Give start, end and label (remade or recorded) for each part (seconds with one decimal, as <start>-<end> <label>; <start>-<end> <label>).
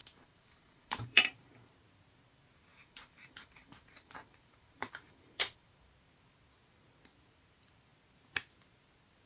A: 0.0-1.7 remade; 1.7-2.7 recorded; 2.7-5.9 remade; 5.9-9.3 recorded